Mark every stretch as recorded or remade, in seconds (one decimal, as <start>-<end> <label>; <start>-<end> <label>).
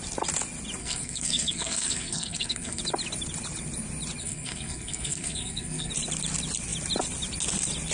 0.0-0.8 recorded; 0.8-2.8 remade; 2.8-4.2 recorded; 4.2-5.9 remade; 5.9-7.9 recorded